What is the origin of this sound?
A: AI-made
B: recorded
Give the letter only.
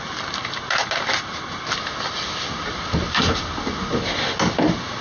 B